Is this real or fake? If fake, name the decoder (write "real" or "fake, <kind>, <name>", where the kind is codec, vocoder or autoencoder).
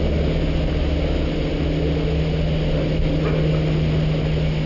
real